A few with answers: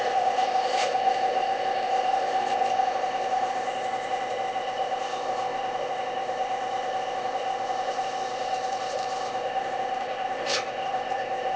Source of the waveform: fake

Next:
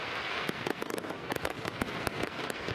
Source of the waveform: fake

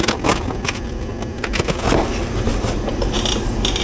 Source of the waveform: real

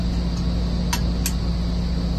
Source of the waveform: real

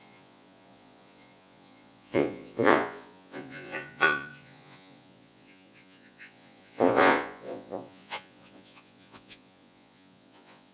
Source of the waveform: fake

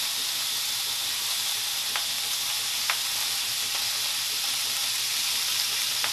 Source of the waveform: real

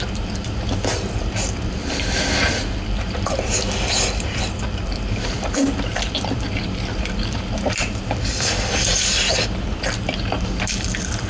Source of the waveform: fake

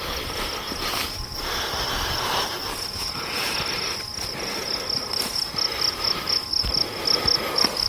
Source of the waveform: real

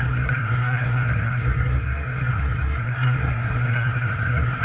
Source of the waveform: fake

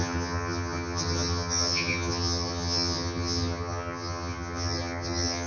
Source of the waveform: fake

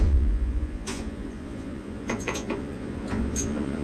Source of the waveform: fake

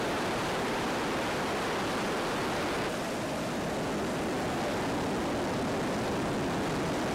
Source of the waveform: real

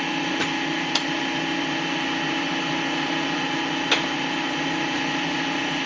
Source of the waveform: real